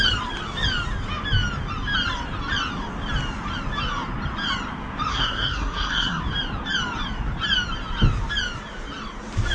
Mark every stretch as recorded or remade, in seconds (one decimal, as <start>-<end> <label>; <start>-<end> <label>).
0.0-5.1 recorded; 5.1-6.2 remade; 6.2-9.5 recorded